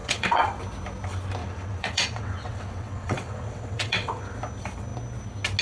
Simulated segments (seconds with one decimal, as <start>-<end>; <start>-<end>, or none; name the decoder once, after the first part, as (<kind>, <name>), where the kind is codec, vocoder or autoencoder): 0.0-0.6 (vocoder, WaveNeXt); 1.4-4.2